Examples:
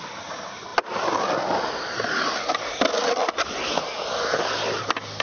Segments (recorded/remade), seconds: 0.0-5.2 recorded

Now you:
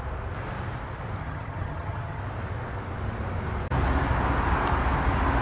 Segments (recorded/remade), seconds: 0.0-1.2 recorded; 1.2-2.2 remade; 2.2-5.4 recorded